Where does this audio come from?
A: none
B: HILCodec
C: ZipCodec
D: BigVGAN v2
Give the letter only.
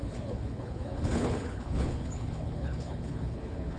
B